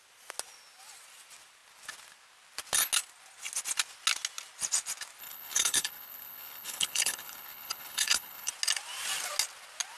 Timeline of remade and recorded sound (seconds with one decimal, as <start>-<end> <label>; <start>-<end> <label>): 0.0-5.2 recorded; 5.2-8.5 remade; 8.5-10.0 recorded